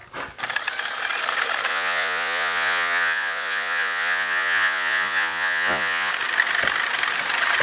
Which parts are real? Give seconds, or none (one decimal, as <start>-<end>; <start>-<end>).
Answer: 0.0-1.7; 6.1-7.6